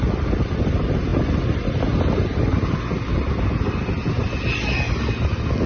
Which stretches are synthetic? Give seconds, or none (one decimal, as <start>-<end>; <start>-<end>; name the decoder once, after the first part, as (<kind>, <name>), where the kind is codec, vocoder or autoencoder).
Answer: none